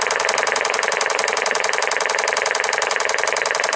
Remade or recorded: recorded